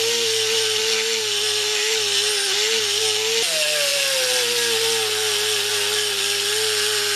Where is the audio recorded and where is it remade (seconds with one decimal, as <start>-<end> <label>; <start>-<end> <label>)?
0.0-7.2 recorded